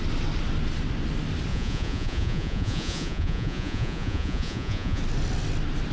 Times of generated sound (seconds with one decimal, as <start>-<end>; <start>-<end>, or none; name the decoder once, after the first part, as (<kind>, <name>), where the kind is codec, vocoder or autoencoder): 1.5-5.0 (vocoder, Vocos)